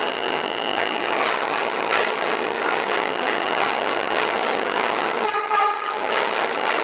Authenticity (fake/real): fake